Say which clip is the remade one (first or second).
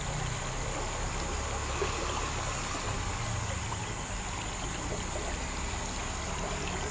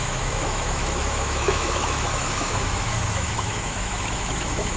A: second